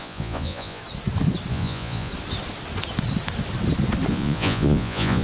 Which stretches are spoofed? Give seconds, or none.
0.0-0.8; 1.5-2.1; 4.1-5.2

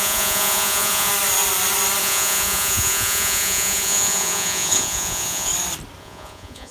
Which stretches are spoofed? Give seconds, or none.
0.0-1.1; 2.0-5.5; 6.0-6.7

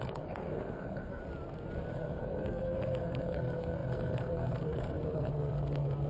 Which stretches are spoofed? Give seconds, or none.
0.0-1.2; 1.9-6.1